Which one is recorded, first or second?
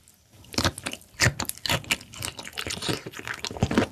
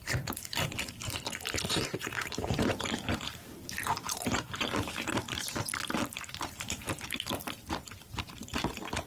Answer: first